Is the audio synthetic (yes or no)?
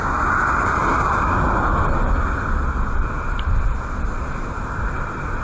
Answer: no